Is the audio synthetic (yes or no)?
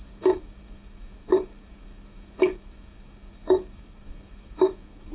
yes